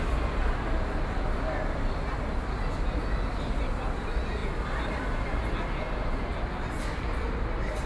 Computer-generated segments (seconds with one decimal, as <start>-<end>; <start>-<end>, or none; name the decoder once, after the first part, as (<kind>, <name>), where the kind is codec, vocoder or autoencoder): none